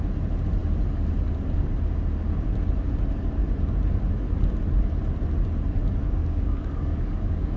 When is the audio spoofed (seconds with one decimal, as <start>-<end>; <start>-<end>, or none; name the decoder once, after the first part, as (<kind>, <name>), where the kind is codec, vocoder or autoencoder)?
6.2-7.6 (codec, DAC)